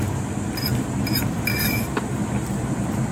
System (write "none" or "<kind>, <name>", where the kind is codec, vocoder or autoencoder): none